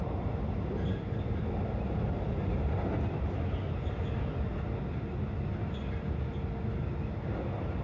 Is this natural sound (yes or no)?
yes